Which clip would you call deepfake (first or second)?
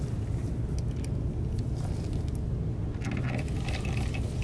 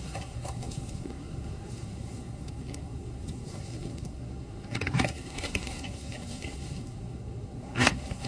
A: second